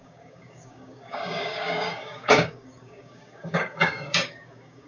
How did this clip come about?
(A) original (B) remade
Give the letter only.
B